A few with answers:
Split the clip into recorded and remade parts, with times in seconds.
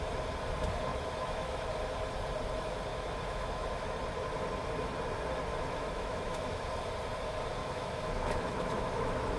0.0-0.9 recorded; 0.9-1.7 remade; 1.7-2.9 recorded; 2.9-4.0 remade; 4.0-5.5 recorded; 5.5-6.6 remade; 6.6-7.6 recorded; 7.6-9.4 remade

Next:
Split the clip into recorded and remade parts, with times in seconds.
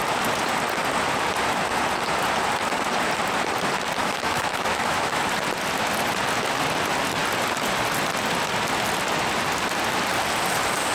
0.0-4.0 recorded; 4.0-5.2 remade; 5.2-10.9 recorded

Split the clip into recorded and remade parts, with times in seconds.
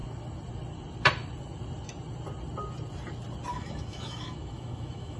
0.0-3.5 recorded; 3.5-5.2 remade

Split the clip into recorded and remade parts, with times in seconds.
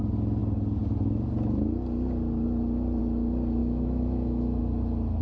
0.0-3.6 recorded; 3.6-4.6 remade; 4.6-5.2 recorded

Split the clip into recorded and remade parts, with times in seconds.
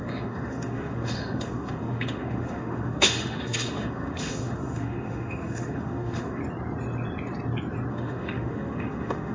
0.0-6.4 remade; 6.4-7.9 recorded; 7.9-9.3 remade